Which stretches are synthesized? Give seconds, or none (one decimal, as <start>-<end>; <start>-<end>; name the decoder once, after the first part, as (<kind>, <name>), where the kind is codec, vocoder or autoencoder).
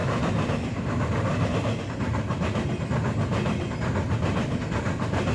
none